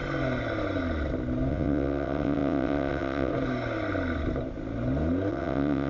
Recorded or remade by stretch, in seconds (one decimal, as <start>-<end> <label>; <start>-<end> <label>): 0.0-1.5 recorded; 1.5-3.3 remade; 3.3-5.3 recorded; 5.3-5.9 remade